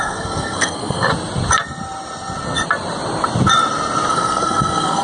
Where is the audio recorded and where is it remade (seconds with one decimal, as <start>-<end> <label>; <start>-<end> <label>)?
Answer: 0.0-1.1 remade; 1.1-4.1 recorded; 4.1-5.0 remade